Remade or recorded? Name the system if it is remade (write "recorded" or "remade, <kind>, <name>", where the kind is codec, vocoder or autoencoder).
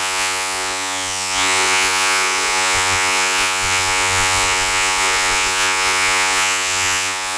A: remade, vocoder, Vocos